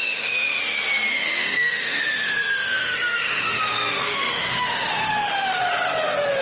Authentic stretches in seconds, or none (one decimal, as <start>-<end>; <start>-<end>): 0.6-1.1; 3.6-4.0; 5.6-6.4

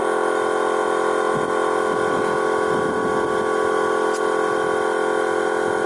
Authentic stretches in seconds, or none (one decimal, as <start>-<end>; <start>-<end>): 0.0-5.9

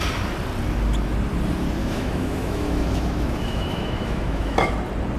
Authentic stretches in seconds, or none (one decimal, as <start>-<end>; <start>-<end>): 0.0-1.8; 4.7-5.2